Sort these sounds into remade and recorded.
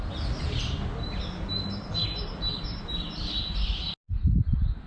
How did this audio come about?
recorded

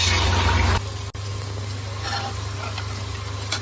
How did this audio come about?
recorded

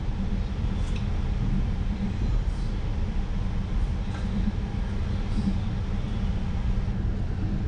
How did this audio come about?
recorded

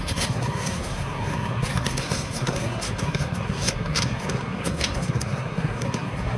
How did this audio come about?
remade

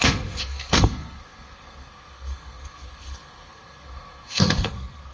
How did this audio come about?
remade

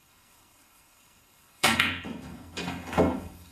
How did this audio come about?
remade